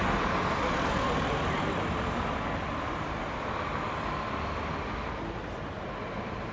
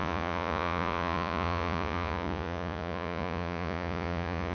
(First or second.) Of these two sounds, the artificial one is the second